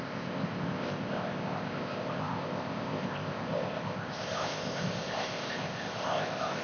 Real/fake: fake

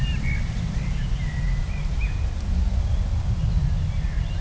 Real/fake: real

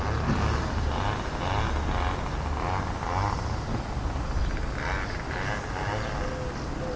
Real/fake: real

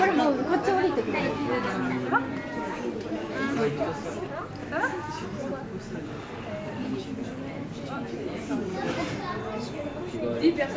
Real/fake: real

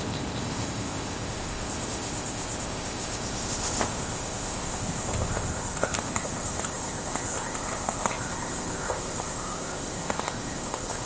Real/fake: fake